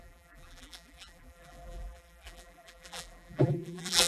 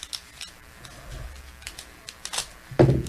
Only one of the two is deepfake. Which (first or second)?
first